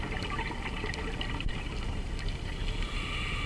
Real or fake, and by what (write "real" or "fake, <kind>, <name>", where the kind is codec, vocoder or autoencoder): real